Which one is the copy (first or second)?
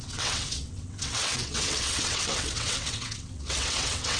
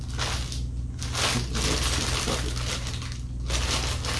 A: first